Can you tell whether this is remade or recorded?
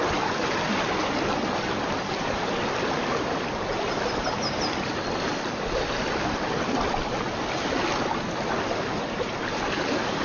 recorded